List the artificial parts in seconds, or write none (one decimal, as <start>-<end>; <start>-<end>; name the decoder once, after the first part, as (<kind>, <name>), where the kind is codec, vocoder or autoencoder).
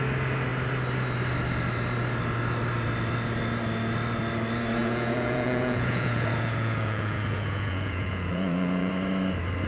4.8-8.9 (vocoder, Vocos)